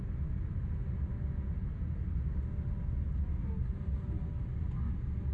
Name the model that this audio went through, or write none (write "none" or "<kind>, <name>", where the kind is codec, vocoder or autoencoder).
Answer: none